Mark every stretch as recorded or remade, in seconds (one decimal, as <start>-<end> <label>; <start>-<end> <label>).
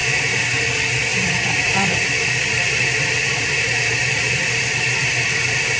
0.0-0.6 remade; 0.6-1.1 recorded; 1.1-4.6 remade; 4.6-5.8 recorded